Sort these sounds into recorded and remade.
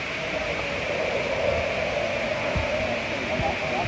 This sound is recorded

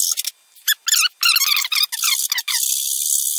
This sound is recorded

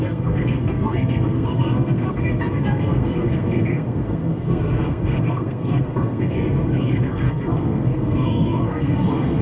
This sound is remade